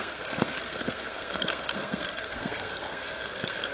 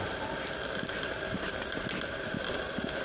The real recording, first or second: second